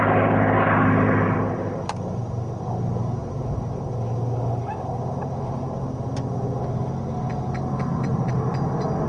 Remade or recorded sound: recorded